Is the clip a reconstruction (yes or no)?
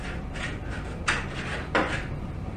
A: no